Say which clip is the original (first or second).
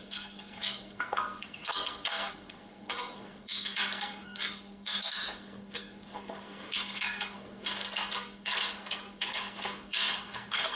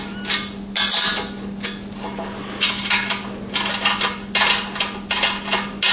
second